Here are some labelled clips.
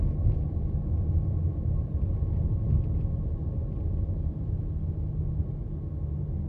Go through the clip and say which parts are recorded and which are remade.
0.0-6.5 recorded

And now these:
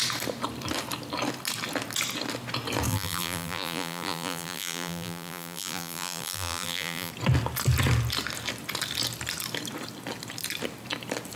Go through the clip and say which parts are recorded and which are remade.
0.0-2.9 recorded; 2.9-7.1 remade; 7.1-11.4 recorded

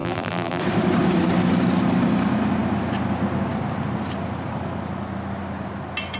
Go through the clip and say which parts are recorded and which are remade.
0.0-0.6 remade; 0.6-6.2 recorded

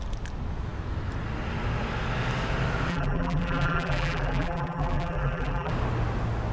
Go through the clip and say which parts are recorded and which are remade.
0.0-2.9 recorded; 2.9-5.7 remade; 5.7-6.5 recorded